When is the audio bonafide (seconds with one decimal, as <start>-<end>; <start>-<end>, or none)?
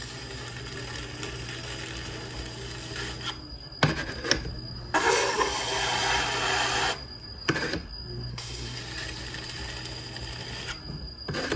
0.0-8.3; 8.8-11.6